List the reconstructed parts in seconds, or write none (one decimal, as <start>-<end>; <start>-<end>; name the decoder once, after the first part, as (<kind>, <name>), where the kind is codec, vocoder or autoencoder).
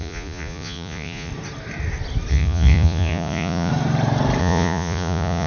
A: 0.0-1.3 (vocoder, Vocos); 2.3-3.7; 4.4-5.5